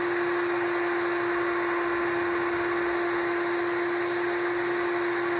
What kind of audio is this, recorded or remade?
recorded